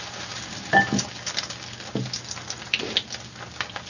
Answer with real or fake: real